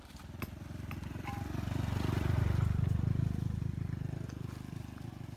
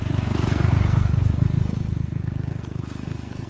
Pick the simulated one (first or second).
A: second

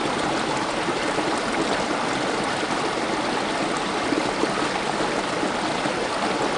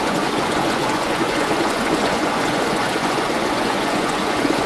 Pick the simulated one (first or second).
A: second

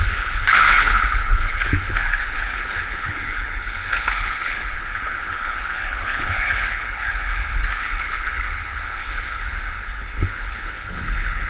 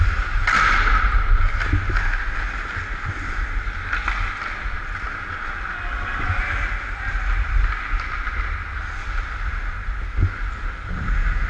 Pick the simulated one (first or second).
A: first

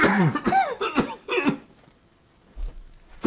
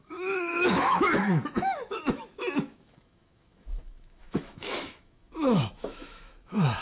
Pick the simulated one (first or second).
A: second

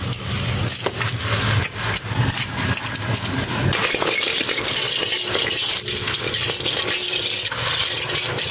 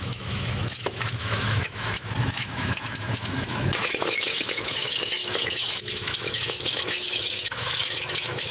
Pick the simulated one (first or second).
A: second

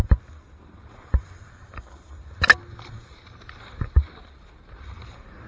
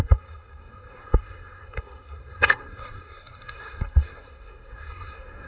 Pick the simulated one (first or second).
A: second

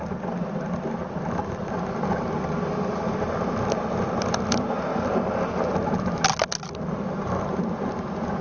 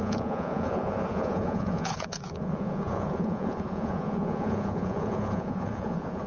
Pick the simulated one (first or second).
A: second